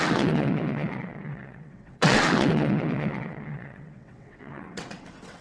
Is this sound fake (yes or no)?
yes